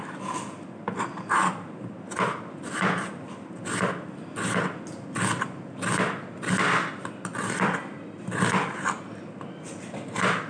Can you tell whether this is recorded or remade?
recorded